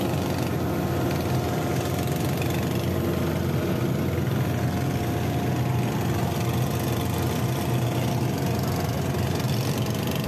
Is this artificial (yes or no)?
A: no